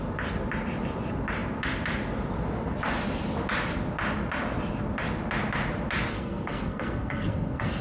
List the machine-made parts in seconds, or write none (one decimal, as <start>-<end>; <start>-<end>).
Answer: 6.1-7.8